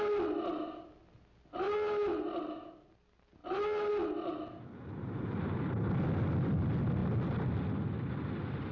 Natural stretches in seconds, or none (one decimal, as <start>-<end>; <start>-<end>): 0.0-8.7